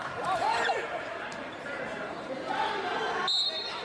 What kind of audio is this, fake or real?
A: fake